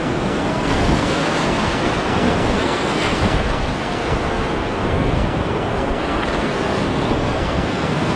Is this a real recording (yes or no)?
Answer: no